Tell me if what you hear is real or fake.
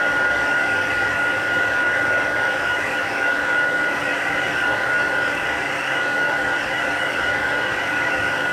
fake